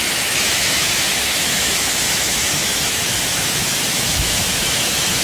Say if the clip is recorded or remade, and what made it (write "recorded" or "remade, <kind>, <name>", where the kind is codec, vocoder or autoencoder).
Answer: remade, autoencoder, DAC-VAE